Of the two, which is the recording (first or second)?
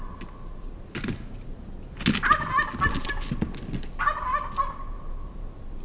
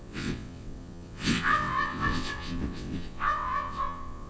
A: first